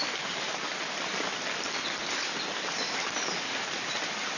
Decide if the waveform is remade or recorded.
recorded